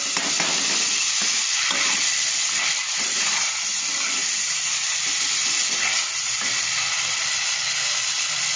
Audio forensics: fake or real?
fake